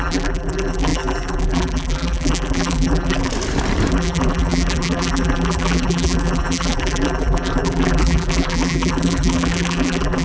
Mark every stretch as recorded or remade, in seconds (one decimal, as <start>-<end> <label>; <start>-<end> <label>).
0.0-3.3 remade; 3.3-3.9 recorded; 3.9-10.2 remade